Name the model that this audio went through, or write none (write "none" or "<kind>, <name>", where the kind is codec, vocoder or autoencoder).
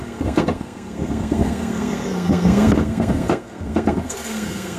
codec, SNAC